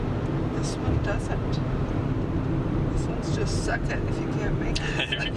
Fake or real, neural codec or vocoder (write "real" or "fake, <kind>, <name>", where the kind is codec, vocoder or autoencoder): real